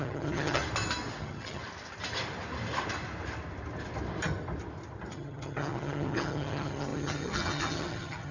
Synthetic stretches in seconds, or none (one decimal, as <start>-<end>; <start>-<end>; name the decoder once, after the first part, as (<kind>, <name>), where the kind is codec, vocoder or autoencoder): 0.0-0.6 (vocoder, HiFi-GAN); 1.2-1.6; 5.1-8.3